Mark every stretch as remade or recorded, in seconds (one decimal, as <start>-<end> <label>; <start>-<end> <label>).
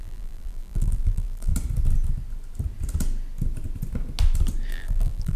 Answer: 0.0-1.5 remade; 1.5-4.7 recorded; 4.7-5.4 remade